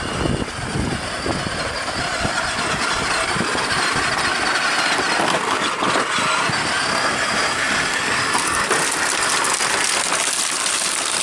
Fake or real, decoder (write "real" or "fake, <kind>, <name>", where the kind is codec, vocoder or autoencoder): real